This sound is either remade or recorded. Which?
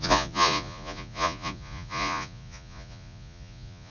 remade